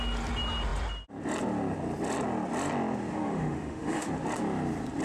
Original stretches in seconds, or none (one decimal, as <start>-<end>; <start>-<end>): 0.0-3.1; 4.1-5.0